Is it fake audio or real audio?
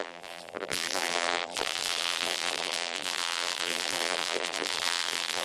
fake